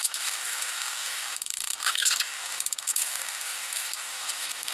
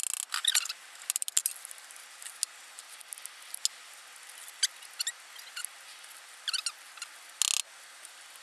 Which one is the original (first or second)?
second